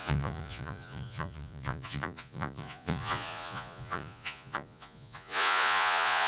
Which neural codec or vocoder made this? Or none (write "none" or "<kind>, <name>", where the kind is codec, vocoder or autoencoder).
vocoder, Vocos